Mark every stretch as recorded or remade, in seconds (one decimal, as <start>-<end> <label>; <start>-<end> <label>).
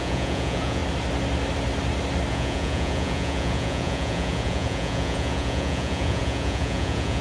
0.0-0.8 remade; 0.8-2.3 recorded; 2.3-7.2 remade